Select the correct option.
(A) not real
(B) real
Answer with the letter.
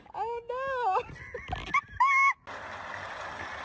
B